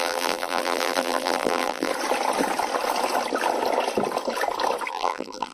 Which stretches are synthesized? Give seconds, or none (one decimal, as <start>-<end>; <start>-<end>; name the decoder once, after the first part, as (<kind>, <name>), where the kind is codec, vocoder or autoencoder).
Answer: 0.0-1.9 (vocoder, BigVGAN v2); 4.9-5.5